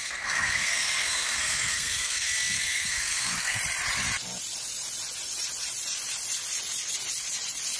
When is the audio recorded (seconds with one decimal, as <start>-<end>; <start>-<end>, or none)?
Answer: 3.6-7.8